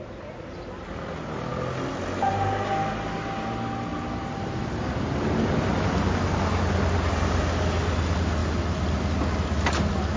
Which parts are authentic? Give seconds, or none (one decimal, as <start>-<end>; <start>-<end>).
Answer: 0.0-10.2